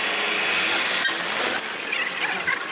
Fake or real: real